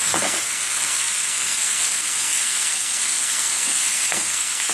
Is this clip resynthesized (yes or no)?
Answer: yes